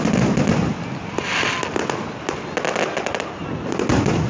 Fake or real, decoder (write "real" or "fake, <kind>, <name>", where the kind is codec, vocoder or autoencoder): real